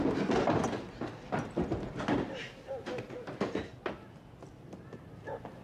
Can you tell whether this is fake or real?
real